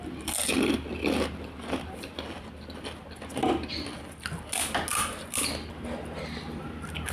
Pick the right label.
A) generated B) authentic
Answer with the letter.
B